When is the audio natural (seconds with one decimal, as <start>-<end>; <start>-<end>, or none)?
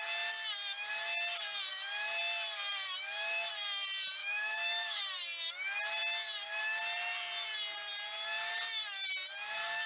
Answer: 0.0-4.2; 5.0-9.9